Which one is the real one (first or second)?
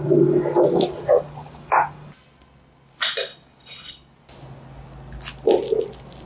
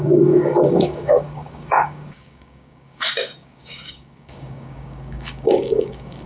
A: first